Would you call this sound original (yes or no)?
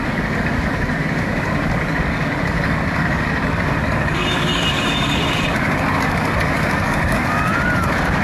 no